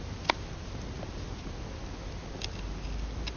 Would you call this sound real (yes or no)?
yes